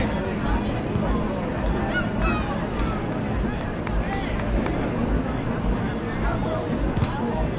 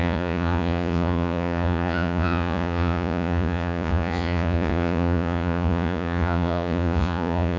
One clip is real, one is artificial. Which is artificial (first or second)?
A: second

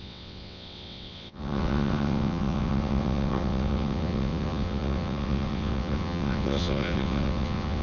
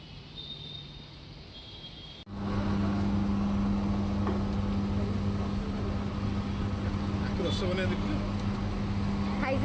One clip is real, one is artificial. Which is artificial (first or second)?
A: first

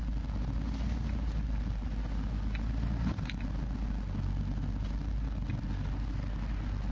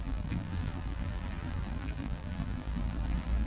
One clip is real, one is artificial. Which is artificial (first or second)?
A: second